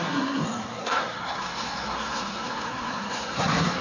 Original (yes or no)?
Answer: no